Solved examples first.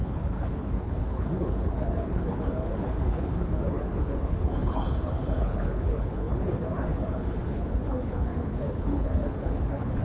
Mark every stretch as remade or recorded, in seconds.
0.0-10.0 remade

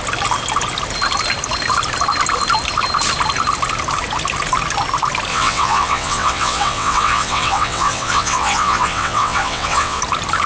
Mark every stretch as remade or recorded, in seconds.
0.0-5.3 recorded; 5.3-10.0 remade; 10.0-10.5 recorded

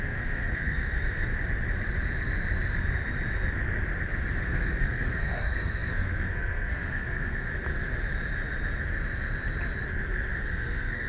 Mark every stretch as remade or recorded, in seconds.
0.0-1.3 remade; 1.3-4.4 recorded; 4.4-7.5 remade; 7.5-10.3 recorded; 10.3-11.1 remade

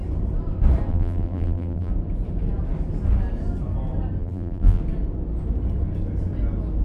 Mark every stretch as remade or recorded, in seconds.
0.0-0.9 recorded; 0.9-1.9 remade; 1.9-4.2 recorded; 4.2-4.8 remade; 4.8-6.8 recorded

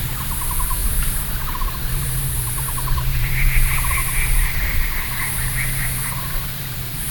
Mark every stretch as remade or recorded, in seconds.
0.0-4.0 remade; 4.0-4.5 recorded; 4.5-7.1 remade

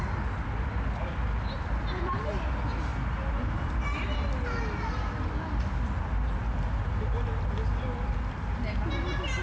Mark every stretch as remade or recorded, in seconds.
0.0-9.4 recorded

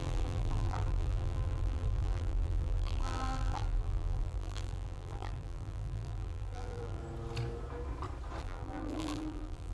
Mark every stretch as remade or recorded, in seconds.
0.0-7.0 remade; 7.0-8.4 recorded; 8.4-9.7 remade